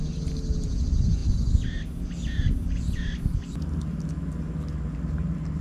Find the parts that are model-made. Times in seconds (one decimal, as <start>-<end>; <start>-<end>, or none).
none